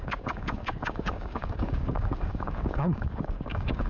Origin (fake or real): fake